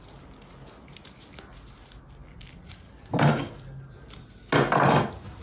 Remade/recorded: recorded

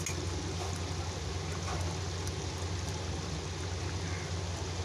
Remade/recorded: recorded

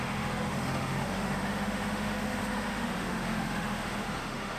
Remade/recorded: remade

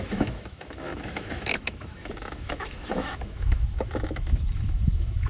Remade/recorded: remade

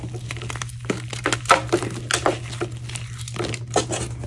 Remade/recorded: recorded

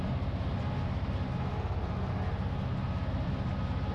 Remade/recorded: recorded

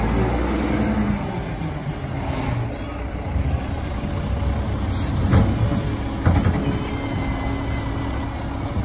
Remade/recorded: recorded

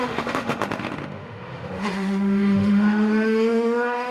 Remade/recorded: remade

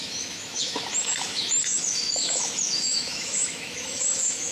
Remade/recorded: remade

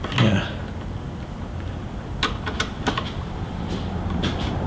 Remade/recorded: recorded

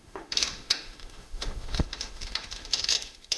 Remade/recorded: remade